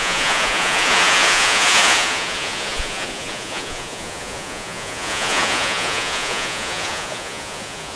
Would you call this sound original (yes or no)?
no